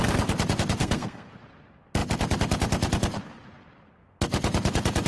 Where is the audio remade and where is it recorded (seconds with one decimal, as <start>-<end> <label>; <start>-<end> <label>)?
0.0-0.8 recorded; 0.8-1.3 remade; 1.3-5.1 recorded